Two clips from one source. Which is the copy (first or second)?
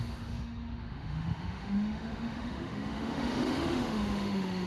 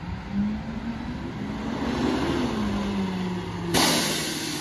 first